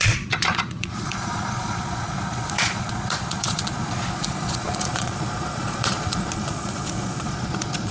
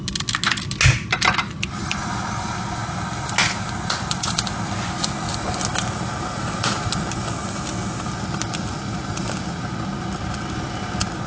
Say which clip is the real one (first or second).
second